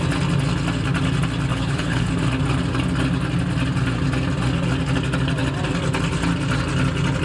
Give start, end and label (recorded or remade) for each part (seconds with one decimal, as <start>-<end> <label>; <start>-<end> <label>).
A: 0.0-1.5 recorded; 1.5-2.1 remade; 2.1-7.2 recorded